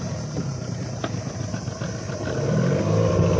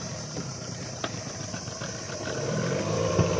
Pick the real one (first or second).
first